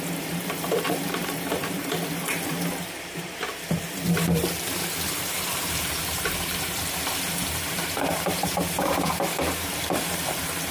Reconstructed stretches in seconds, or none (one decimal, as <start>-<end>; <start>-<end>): 0.0-10.7